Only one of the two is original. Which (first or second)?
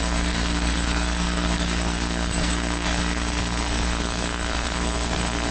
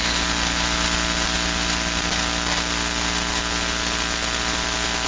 second